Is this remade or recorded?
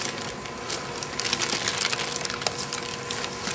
recorded